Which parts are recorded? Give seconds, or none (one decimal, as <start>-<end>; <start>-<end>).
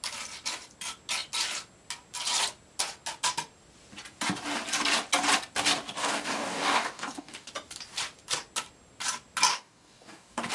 0.0-6.0; 7.5-9.5